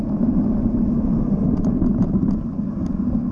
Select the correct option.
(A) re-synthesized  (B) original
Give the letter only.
B